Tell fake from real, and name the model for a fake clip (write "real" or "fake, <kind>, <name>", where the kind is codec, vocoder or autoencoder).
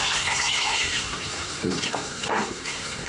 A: fake, codec, SNAC